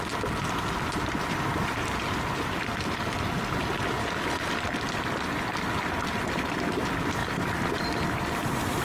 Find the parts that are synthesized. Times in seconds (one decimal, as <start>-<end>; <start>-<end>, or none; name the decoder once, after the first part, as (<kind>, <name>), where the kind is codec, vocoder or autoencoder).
none